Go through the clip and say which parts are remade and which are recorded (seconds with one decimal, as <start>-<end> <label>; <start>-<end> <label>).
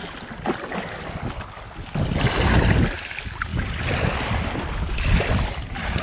0.0-6.0 recorded